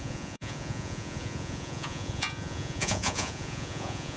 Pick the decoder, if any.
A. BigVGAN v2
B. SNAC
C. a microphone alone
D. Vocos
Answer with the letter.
D